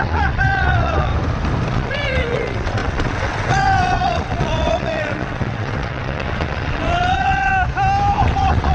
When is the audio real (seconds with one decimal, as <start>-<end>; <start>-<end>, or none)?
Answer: 1.1-1.7; 7.5-8.2